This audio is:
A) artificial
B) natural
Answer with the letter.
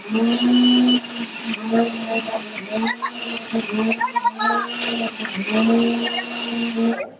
B